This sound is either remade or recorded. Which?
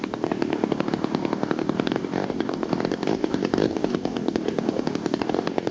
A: remade